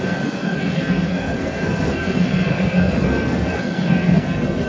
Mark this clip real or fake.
fake